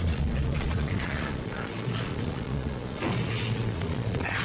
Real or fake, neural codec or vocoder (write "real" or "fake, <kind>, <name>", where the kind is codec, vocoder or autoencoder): fake, vocoder, Vocos